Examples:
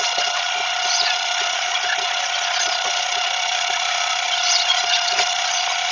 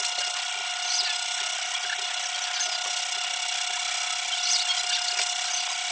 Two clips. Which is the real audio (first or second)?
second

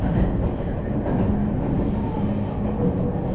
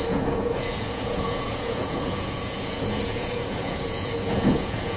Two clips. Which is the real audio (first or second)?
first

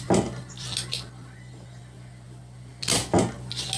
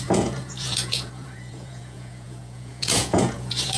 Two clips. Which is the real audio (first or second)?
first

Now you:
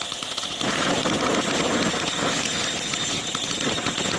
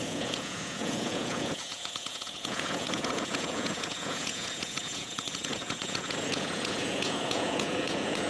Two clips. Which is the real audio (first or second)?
first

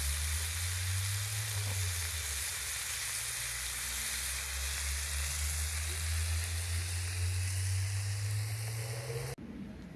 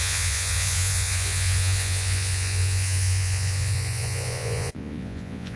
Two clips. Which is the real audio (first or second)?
first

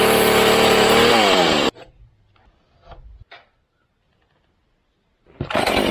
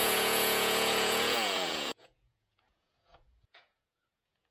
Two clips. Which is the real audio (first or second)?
first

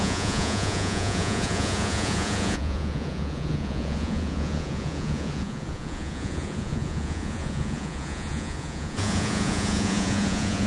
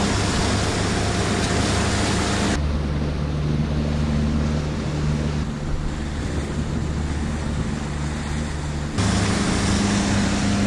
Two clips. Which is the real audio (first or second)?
second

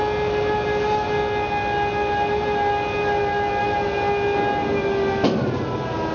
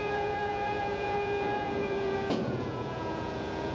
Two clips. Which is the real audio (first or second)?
first